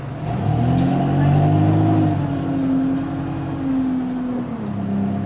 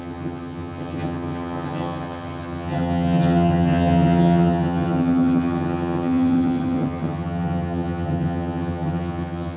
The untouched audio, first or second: first